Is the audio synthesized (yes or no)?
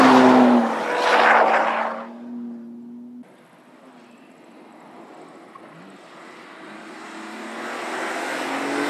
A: no